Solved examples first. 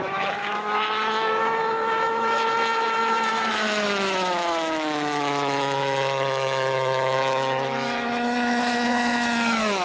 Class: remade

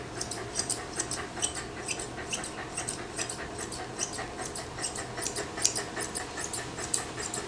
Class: recorded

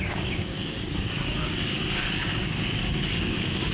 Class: remade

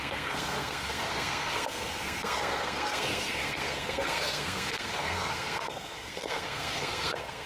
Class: remade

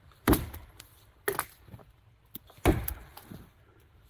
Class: remade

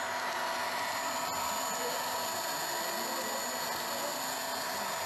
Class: recorded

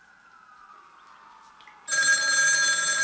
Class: recorded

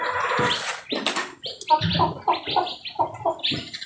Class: recorded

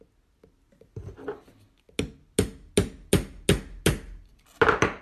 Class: recorded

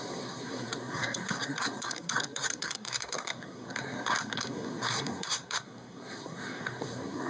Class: remade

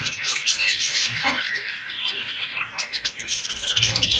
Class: remade